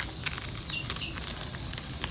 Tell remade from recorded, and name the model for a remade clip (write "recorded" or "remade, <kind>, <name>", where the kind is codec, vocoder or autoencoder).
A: recorded